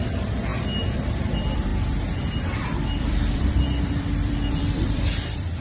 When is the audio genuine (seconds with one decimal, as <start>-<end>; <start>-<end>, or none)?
1.7-2.4